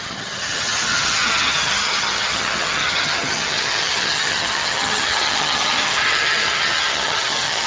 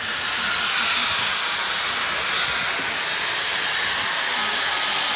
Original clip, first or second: second